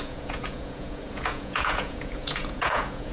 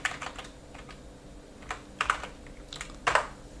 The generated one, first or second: first